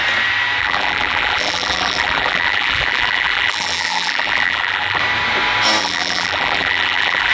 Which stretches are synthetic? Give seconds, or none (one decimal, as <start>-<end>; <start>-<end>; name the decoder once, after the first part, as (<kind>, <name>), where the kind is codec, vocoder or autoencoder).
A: 0.6-5.0 (vocoder, BigVGAN v2); 5.8-7.3